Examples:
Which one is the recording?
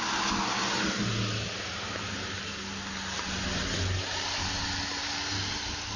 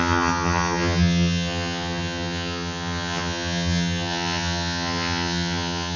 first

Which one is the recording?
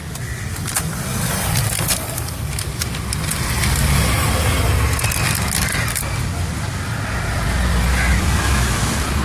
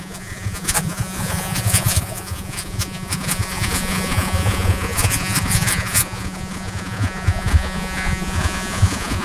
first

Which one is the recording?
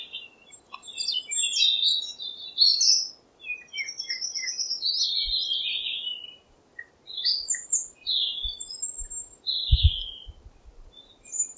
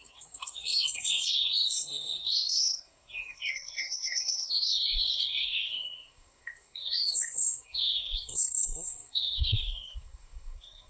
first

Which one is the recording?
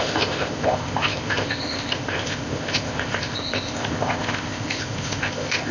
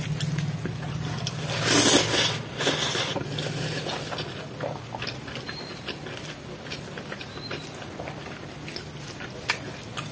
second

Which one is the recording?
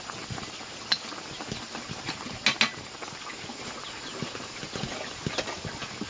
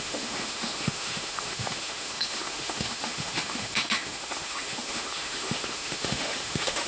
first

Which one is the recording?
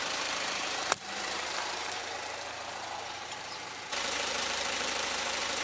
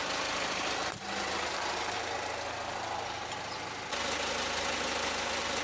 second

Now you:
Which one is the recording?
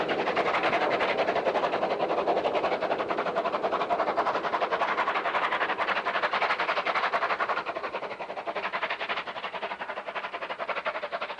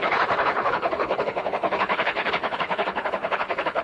first